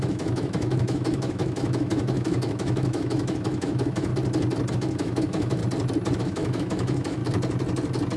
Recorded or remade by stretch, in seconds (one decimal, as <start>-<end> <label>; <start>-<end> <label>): 0.0-4.1 remade; 4.1-4.7 recorded; 4.7-5.6 remade; 5.6-6.2 recorded; 6.2-7.2 remade; 7.2-8.2 recorded